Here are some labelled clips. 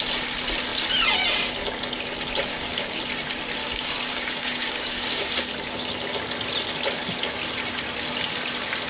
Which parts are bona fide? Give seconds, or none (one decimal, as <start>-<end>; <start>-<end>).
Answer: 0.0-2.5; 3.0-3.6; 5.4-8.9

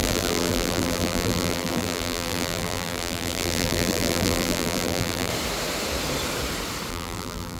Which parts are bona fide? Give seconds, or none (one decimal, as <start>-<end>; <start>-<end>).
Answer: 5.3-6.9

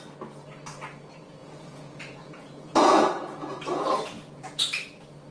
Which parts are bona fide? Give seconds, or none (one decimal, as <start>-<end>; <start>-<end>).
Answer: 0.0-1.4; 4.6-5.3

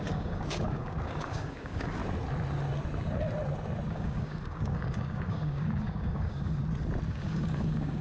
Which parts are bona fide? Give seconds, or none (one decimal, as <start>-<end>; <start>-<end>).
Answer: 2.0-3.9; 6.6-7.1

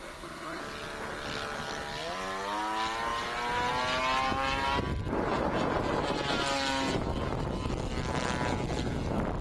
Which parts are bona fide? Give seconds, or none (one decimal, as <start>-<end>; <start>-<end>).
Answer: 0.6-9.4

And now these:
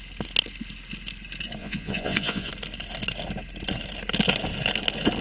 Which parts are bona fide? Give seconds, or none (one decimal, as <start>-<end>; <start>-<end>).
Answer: 0.0-1.6; 2.5-5.2